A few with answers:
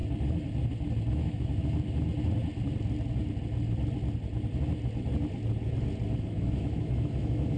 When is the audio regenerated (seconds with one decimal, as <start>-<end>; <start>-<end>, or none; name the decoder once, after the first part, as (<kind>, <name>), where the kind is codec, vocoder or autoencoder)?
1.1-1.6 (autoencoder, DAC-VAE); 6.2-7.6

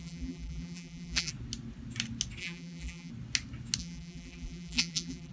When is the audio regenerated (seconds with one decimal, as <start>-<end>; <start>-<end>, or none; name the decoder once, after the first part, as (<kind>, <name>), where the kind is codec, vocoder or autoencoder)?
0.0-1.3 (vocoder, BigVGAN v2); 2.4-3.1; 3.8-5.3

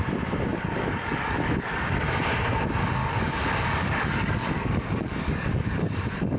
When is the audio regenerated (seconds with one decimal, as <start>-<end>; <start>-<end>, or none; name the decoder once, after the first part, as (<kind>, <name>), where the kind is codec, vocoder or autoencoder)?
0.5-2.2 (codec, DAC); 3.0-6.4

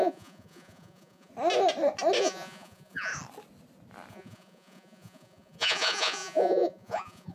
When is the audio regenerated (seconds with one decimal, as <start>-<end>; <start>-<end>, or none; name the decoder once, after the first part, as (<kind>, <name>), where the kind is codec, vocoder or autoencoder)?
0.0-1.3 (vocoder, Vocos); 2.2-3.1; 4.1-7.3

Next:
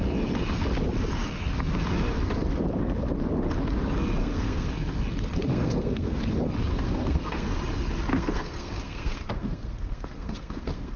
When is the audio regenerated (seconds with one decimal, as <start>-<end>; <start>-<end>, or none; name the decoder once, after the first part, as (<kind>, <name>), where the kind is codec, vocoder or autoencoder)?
4.2-4.7 (codec, SNAC); 5.5-6.2; 6.7-7.6; 8.1-11.0

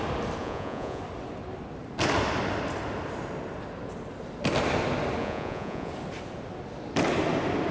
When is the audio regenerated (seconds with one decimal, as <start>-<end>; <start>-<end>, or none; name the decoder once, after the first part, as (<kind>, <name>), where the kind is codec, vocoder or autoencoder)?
0.4-1.0 (vocoder, Vocos); 5.2-5.9

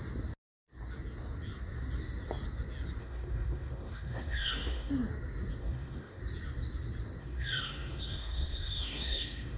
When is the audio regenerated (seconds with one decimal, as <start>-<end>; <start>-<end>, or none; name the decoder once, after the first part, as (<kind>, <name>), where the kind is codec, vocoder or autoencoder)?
3.0-4.9 (codec, SNAC); 5.6-6.2; 7.2-9.6

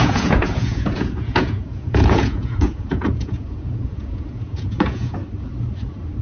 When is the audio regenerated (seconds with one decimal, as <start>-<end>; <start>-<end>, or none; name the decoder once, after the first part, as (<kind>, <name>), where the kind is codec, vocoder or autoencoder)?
0.0-5.2 (vocoder, Vocos)